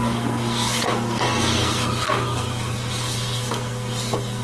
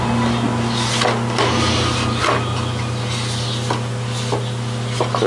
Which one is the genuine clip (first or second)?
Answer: second